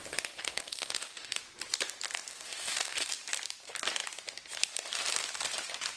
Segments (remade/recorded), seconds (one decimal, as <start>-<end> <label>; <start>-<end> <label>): 0.0-0.4 recorded; 0.4-1.4 remade; 1.4-2.3 recorded; 2.3-3.1 remade; 3.1-6.0 recorded